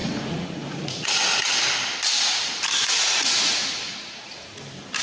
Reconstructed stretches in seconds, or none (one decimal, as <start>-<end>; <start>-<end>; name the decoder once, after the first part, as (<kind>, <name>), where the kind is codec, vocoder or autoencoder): 0.0-1.1 (vocoder, Vocos); 2.8-4.6